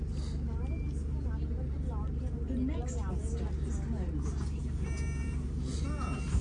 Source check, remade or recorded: recorded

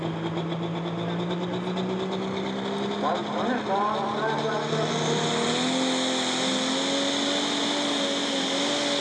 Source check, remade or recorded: recorded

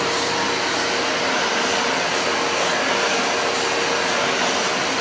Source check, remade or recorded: recorded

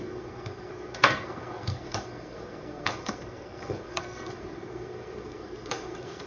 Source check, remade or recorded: remade